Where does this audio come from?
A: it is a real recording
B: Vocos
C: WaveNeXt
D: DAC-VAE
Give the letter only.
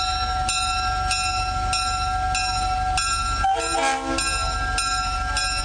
A